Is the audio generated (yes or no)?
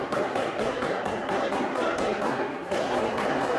yes